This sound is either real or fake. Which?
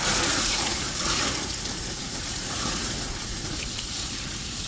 fake